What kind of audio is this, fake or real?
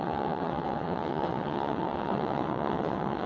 fake